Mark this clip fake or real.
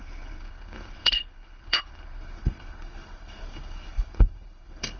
fake